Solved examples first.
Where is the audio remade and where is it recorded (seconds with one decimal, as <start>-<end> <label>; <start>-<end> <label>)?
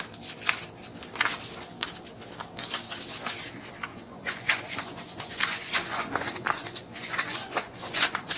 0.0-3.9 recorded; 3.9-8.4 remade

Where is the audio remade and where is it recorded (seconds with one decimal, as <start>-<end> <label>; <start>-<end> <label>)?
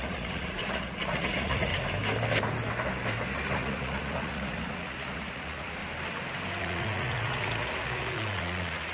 0.0-1.7 remade; 1.7-3.5 recorded; 3.5-5.8 remade; 5.8-6.6 recorded; 6.6-8.9 remade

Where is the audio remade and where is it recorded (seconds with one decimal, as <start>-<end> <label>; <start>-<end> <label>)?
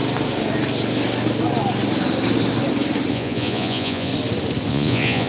0.0-3.1 recorded; 3.1-4.1 remade; 4.1-4.7 recorded; 4.7-5.3 remade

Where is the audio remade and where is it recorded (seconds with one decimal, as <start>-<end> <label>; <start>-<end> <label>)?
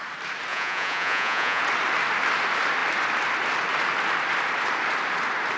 0.0-0.5 recorded; 0.5-1.6 remade; 1.6-5.6 recorded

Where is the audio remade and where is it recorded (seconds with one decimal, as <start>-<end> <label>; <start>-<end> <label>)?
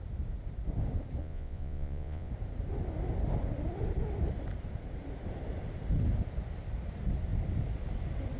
0.0-1.2 recorded; 1.2-2.3 remade; 2.3-8.4 recorded